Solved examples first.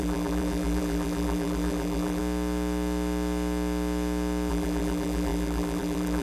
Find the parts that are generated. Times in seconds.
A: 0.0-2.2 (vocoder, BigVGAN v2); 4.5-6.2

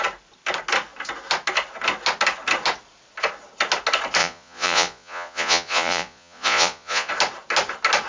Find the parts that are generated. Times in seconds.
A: 4.2-7.1 (vocoder, Vocos)

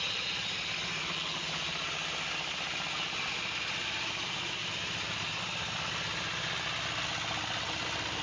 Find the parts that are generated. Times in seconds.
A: none

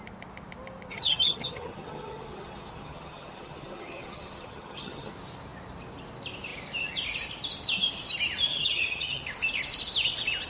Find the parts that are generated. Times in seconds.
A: 0.9-5.1 (vocoder, HiFi-GAN); 8.5-9.2